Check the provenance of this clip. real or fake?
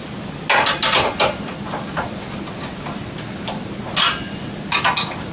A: real